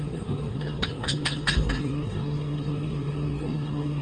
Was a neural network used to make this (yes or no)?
yes